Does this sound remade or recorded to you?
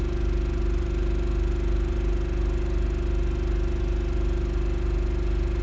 recorded